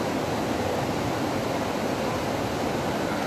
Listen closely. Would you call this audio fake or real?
real